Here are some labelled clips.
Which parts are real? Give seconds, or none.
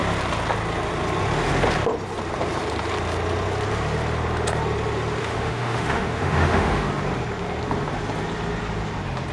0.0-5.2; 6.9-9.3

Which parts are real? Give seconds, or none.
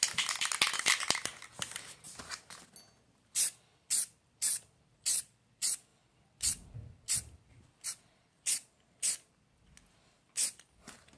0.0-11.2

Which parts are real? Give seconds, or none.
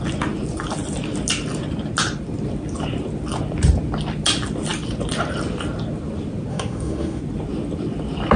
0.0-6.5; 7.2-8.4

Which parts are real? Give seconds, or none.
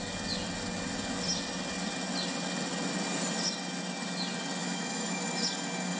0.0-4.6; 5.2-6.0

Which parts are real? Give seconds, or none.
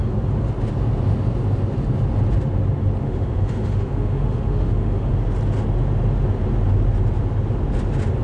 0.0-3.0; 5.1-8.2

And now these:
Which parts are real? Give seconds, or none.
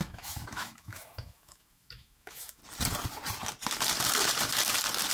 2.6-5.1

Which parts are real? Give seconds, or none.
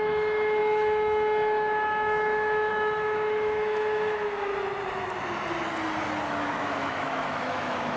4.5-6.3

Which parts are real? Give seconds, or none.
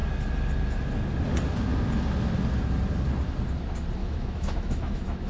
0.0-4.0